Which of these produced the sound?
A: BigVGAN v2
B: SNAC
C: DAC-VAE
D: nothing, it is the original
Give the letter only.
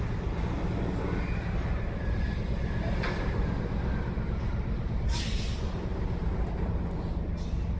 D